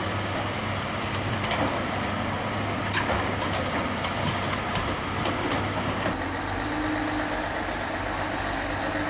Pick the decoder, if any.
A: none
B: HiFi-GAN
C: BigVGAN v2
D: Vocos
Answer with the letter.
A